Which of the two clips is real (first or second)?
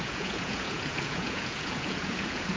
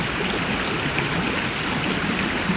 second